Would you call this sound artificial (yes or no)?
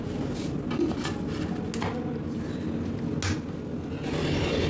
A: no